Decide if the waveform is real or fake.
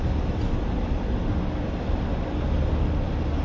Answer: real